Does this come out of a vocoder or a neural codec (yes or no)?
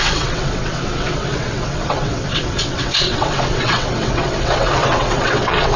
yes